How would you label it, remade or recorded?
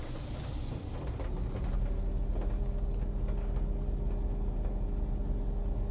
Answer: recorded